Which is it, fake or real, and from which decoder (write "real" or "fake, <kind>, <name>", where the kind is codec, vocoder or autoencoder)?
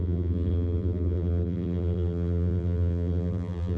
fake, vocoder, BigVGAN v2